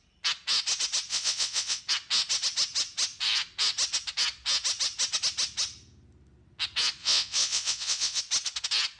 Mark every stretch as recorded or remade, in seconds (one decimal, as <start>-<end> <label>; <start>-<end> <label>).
0.0-1.1 recorded; 1.1-1.8 remade; 1.8-7.0 recorded; 7.0-8.2 remade; 8.2-9.0 recorded